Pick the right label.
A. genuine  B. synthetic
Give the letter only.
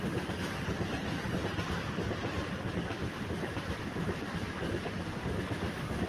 B